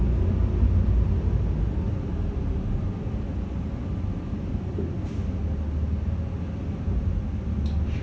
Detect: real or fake real